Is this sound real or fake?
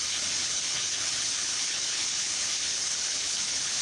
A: fake